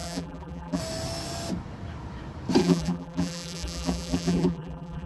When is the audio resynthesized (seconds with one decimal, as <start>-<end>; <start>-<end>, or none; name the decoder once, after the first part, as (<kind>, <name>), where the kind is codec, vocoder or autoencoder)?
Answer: 0.0-0.8 (vocoder, BigVGAN v2); 2.6-5.1